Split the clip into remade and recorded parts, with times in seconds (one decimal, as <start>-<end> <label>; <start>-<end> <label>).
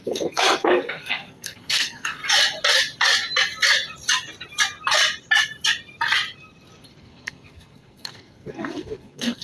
0.0-2.2 remade; 2.2-7.0 recorded; 7.0-9.4 remade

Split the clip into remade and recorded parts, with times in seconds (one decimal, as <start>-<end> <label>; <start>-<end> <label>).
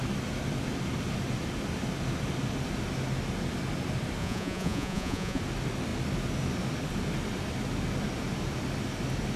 0.0-4.2 recorded; 4.2-5.4 remade; 5.4-9.4 recorded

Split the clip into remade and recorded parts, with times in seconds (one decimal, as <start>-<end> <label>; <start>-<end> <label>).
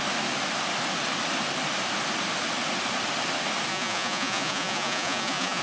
0.0-3.7 recorded; 3.7-5.6 remade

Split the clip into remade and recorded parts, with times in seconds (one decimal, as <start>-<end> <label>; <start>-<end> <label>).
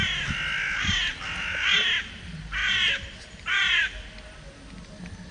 0.0-5.3 recorded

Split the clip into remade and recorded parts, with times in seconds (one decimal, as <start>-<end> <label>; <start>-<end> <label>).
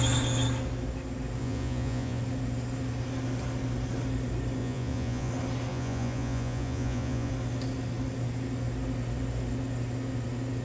0.0-1.4 recorded; 1.4-2.2 remade; 2.2-4.6 recorded; 4.6-5.3 remade; 5.3-5.7 recorded; 5.7-7.3 remade; 7.3-10.6 recorded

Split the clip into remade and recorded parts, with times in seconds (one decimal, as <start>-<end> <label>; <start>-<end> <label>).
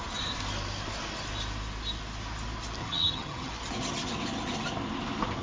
0.0-2.8 recorded; 2.8-3.5 remade; 3.5-5.4 recorded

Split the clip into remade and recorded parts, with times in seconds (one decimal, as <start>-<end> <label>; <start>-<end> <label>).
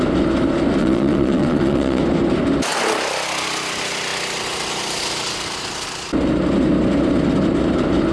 0.0-0.8 recorded; 0.8-2.0 remade; 2.0-8.1 recorded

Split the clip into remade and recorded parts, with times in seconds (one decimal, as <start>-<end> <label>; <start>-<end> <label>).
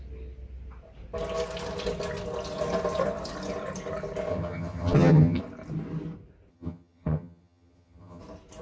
0.0-4.3 recorded; 4.3-5.4 remade; 5.4-6.5 recorded; 6.5-8.2 remade; 8.2-8.6 recorded